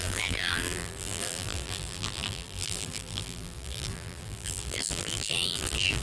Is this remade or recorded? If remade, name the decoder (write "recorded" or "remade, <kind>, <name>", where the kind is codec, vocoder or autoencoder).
remade, vocoder, BigVGAN v2